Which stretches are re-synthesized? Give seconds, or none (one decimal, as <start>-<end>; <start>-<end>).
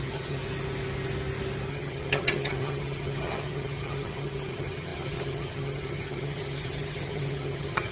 0.0-0.4; 1.7-7.9